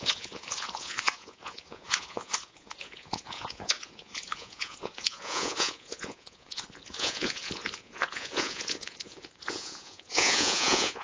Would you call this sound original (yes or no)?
no